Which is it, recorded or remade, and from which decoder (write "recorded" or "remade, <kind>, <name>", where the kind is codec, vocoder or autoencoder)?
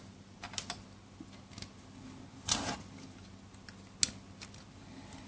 recorded